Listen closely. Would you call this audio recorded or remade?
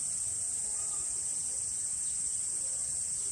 recorded